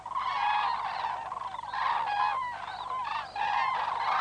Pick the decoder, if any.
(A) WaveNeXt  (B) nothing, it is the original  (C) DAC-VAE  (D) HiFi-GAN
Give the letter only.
B